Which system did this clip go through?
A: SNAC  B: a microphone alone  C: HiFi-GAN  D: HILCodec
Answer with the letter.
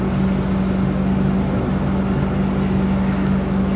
B